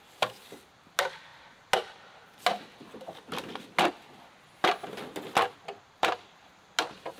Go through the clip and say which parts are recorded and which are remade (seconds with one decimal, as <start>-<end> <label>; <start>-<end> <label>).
0.0-7.2 recorded